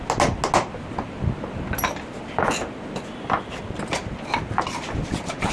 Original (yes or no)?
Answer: yes